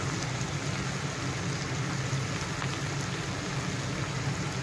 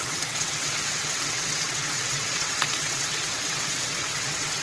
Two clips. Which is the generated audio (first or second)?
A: second